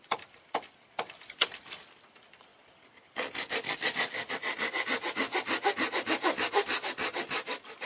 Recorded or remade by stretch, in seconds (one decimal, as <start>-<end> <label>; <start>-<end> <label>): 0.0-7.9 recorded